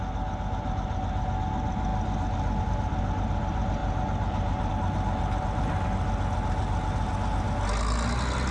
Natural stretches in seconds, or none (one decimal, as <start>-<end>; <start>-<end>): 0.0-8.5